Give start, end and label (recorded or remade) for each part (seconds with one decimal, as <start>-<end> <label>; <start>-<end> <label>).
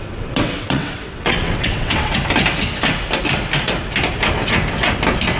0.0-2.2 remade; 2.2-5.4 recorded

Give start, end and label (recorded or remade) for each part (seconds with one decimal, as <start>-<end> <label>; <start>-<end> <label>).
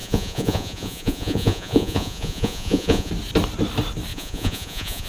0.0-3.1 remade; 3.1-4.1 recorded; 4.1-5.1 remade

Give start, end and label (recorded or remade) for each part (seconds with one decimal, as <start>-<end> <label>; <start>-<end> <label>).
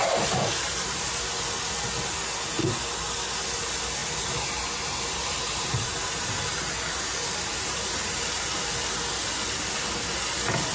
0.0-1.2 remade; 1.2-4.0 recorded; 4.0-8.7 remade; 8.7-10.7 recorded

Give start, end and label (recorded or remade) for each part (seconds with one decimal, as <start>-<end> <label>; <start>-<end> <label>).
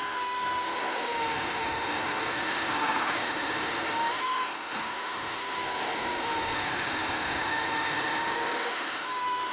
0.0-9.5 remade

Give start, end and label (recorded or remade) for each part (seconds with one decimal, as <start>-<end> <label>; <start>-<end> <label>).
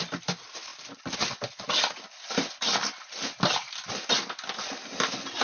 0.0-5.4 recorded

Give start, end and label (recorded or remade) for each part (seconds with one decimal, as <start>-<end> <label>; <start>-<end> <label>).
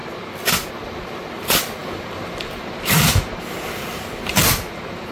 0.0-1.8 recorded; 1.8-3.3 remade; 3.3-5.1 recorded